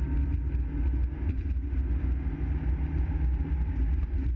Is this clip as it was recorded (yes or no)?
yes